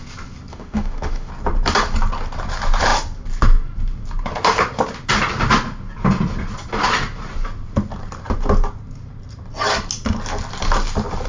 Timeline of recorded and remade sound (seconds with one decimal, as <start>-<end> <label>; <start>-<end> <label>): 0.0-0.5 recorded; 0.5-1.3 remade; 1.3-11.3 recorded